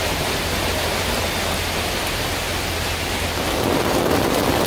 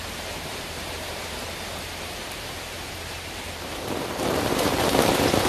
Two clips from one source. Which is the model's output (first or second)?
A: second